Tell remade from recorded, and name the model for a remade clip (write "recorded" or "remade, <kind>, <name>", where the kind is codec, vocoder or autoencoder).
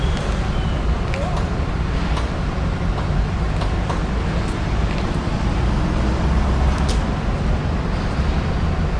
recorded